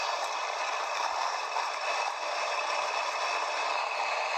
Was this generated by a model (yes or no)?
no